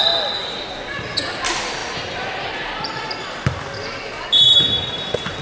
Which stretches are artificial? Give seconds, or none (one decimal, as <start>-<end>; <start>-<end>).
none